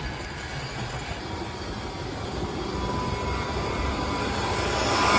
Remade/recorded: recorded